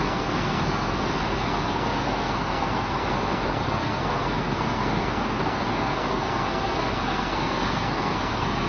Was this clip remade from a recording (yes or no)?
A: yes